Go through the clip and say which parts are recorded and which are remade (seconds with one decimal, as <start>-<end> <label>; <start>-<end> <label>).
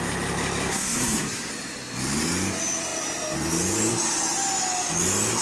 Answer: 0.0-0.7 recorded; 0.7-1.5 remade; 1.5-5.4 recorded